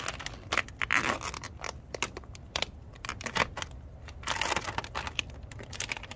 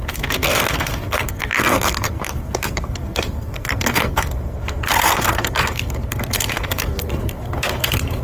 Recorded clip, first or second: first